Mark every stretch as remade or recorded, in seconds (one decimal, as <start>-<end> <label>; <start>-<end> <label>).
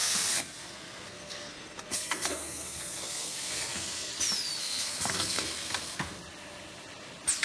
0.0-4.1 remade; 4.1-4.6 recorded; 4.6-6.2 remade; 6.2-7.4 recorded